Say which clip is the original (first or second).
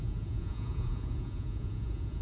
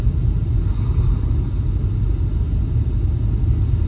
second